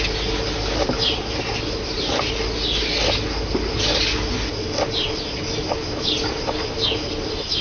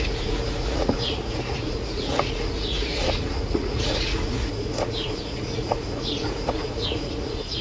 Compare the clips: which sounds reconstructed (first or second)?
second